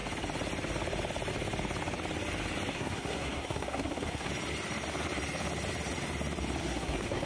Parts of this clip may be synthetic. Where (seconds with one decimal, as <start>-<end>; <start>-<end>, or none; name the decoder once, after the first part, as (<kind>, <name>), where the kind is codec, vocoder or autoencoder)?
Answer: 2.7-4.3 (codec, SNAC); 6.6-7.3